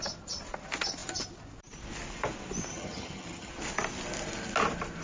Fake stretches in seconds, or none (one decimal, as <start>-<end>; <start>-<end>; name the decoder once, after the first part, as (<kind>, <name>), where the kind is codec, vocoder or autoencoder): 2.7-3.5 (vocoder, HiFi-GAN)